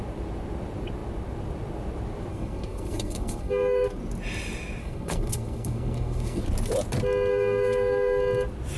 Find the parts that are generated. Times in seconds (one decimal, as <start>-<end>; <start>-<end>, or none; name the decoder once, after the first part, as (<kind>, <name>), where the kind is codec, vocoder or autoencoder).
2.3-4.0 (codec, SNAC); 4.8-6.4; 7.3-8.2